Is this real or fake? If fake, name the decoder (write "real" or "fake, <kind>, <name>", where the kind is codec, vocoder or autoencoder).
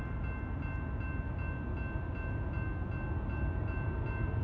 real